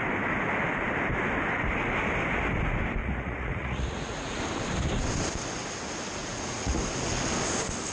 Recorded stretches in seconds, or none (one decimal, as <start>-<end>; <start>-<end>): 0.0-3.0; 4.4-6.2; 6.8-7.9